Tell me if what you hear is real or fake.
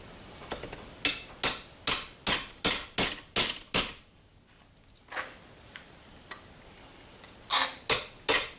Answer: real